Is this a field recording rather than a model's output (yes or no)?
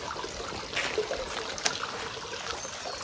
yes